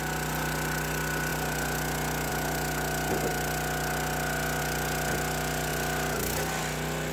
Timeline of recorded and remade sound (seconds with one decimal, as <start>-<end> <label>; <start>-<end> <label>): 0.0-7.1 recorded